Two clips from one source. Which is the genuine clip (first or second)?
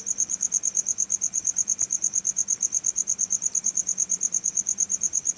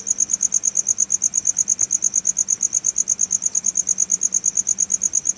second